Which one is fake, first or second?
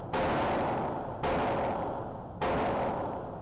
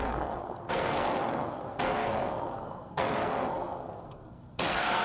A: second